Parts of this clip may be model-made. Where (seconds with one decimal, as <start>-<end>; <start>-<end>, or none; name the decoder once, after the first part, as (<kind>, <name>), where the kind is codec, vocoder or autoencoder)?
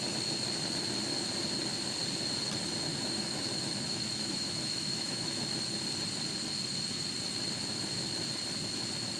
2.9-5.4 (autoencoder, DAC-VAE)